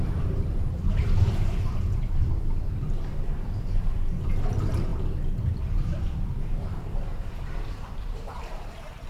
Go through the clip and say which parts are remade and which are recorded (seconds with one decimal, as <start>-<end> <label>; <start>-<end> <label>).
0.0-4.9 remade; 4.9-5.5 recorded; 5.5-9.1 remade